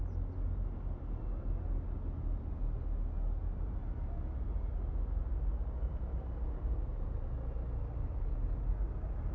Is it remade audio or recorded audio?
recorded